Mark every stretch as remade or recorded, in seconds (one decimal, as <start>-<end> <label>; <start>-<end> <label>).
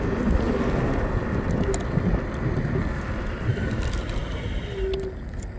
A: 0.0-5.6 recorded